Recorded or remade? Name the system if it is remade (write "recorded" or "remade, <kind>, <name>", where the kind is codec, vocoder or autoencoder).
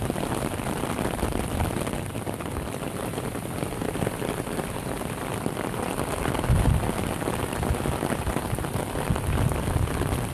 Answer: recorded